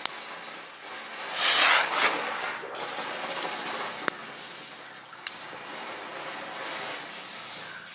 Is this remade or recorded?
recorded